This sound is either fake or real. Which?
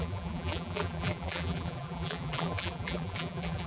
fake